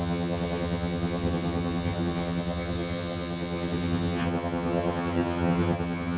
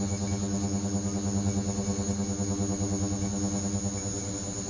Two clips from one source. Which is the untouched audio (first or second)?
second